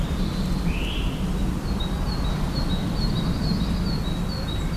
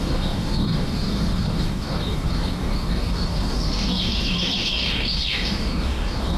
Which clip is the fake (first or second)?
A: second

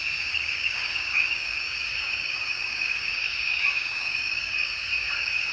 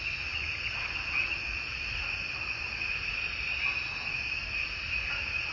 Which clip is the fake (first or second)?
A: first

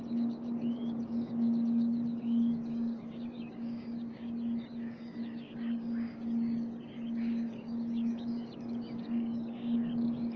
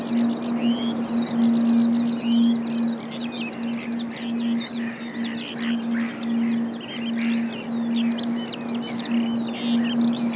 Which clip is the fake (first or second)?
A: first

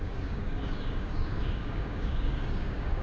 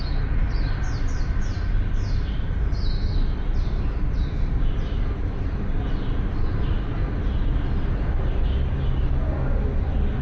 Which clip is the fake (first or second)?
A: first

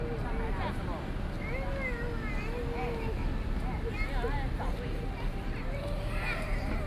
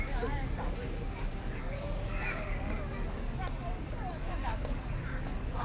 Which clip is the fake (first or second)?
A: second